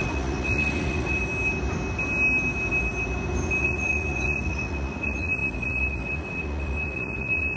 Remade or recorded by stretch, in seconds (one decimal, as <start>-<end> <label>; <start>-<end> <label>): 0.0-1.2 remade; 1.2-3.6 recorded; 3.6-7.6 remade